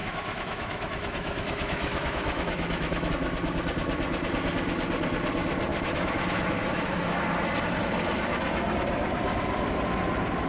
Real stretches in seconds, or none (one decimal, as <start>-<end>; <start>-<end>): 3.1-5.7; 7.2-10.5